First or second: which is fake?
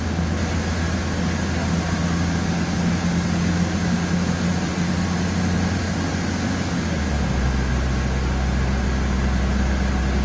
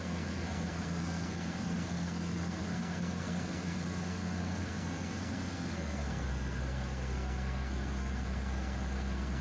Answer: second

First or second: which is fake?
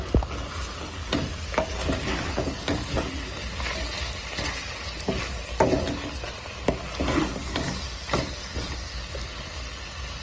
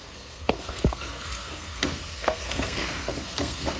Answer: second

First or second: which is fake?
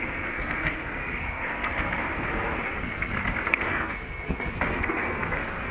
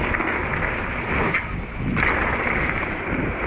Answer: first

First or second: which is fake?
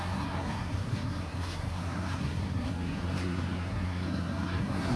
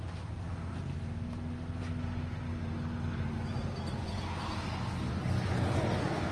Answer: first